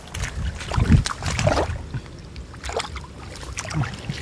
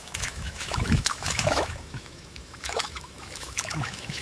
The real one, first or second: first